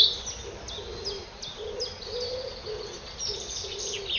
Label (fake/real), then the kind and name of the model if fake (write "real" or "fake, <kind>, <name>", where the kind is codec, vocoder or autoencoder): real